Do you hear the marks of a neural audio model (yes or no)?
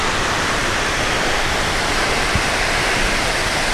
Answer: yes